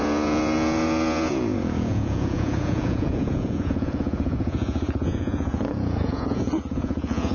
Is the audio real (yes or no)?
no